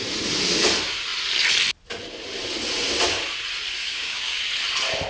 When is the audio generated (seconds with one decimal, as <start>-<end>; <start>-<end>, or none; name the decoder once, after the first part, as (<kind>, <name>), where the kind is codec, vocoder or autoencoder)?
3.8-4.4 (codec, DAC)